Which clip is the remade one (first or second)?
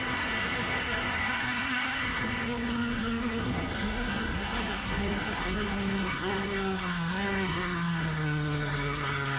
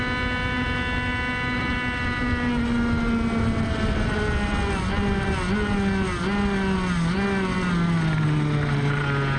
first